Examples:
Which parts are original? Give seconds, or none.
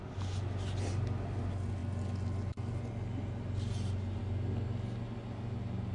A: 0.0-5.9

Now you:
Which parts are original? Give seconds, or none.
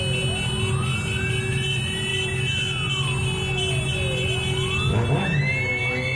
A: 0.0-6.2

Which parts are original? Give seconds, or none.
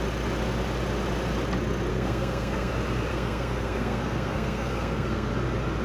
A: 0.0-1.9; 2.7-3.1; 5.3-5.8